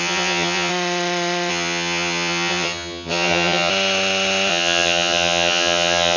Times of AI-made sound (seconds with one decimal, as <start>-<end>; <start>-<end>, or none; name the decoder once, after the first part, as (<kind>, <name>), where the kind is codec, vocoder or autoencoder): 0.0-0.7 (vocoder, HiFi-GAN); 1.5-3.7; 4.5-6.2